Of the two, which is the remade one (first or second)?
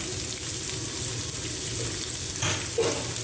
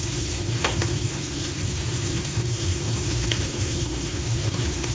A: second